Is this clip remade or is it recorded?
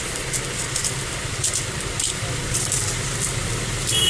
recorded